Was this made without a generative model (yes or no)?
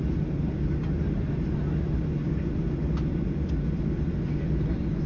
yes